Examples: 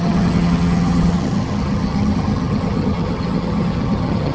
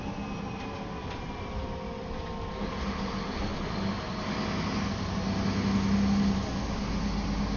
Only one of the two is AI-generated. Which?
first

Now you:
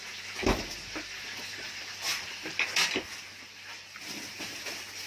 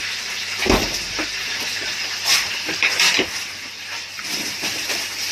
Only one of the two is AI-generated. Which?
second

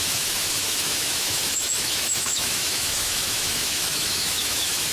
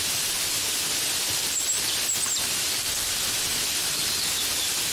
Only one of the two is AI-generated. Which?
first